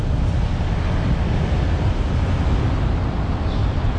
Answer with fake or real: real